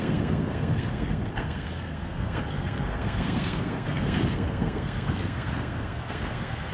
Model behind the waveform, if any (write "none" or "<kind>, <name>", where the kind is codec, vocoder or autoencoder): codec, SNAC